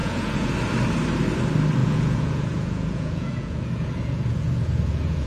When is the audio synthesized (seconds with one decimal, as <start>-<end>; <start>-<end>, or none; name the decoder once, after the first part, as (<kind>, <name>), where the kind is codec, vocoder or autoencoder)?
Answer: 0.0-0.5 (vocoder, Vocos); 1.8-5.3